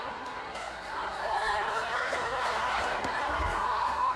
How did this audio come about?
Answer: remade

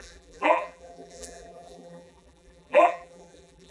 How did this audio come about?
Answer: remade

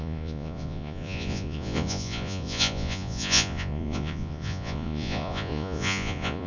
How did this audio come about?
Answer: remade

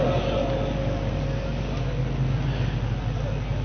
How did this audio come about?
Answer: recorded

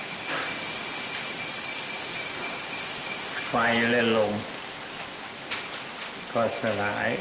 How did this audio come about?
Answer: recorded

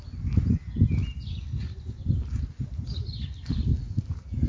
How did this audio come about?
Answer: recorded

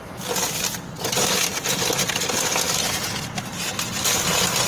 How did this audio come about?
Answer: recorded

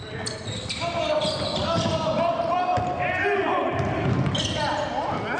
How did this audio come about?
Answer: recorded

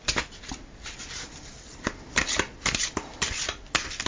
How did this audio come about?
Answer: recorded